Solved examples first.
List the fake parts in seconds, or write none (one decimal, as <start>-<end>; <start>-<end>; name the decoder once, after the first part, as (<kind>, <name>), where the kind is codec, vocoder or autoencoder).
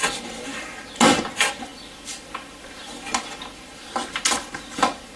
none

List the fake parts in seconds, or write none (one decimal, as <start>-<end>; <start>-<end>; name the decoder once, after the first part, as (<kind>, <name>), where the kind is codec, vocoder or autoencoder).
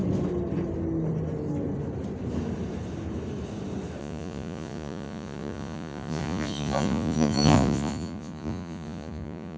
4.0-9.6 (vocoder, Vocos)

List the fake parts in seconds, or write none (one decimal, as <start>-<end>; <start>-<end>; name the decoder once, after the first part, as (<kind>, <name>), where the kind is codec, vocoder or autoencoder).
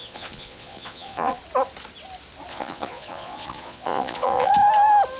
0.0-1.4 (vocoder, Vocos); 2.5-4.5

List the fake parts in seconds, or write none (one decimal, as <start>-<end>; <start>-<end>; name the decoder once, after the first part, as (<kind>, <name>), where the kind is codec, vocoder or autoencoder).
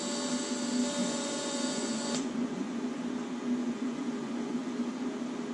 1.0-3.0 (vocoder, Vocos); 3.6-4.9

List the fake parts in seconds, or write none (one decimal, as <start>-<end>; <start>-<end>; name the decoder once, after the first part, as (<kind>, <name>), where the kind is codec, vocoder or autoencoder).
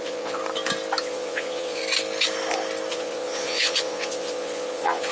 0.0-0.4 (vocoder, Vocos); 1.0-1.8; 2.9-5.1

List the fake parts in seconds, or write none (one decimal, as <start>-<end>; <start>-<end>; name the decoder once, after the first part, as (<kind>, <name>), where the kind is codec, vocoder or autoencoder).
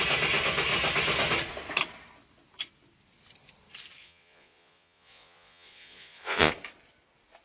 4.0-6.5 (vocoder, Vocos)